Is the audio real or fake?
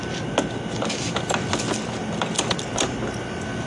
real